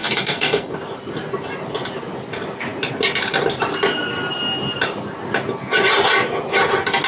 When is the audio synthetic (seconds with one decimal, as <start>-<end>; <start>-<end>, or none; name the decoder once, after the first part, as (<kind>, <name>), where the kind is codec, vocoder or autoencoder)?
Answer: 0.0-0.7 (codec, SNAC)